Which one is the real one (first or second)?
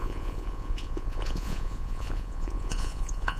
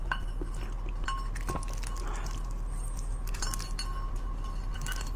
second